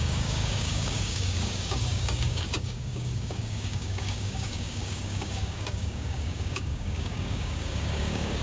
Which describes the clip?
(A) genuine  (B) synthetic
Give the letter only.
B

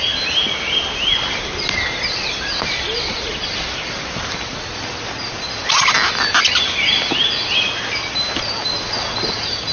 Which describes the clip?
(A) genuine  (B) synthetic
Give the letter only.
A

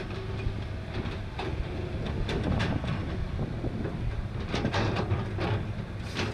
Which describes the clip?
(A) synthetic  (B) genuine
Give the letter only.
B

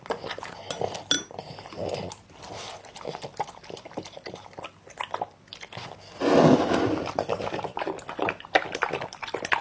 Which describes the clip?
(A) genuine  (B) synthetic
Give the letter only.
A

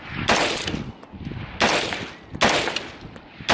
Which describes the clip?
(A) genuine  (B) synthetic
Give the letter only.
A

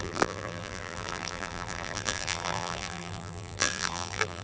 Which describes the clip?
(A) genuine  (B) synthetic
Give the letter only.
B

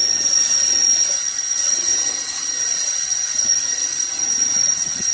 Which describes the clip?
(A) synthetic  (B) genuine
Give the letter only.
A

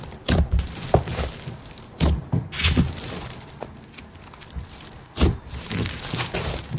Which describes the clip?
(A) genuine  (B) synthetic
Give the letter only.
A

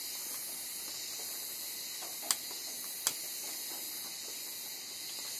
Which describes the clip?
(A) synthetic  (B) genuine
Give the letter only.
B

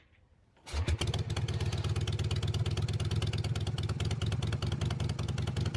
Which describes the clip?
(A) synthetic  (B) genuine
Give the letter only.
B